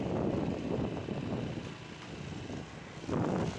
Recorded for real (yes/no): yes